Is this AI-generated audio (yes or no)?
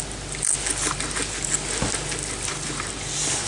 no